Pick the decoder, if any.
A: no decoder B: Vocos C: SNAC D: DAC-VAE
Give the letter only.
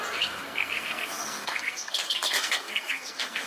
C